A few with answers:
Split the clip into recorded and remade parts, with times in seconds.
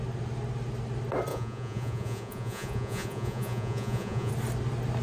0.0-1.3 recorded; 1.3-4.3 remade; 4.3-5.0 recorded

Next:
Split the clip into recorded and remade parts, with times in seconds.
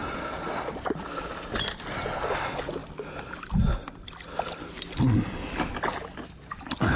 0.0-7.0 recorded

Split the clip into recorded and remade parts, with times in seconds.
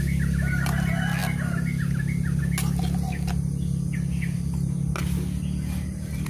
0.0-6.3 recorded